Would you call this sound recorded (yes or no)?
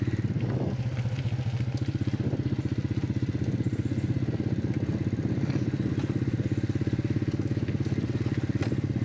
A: yes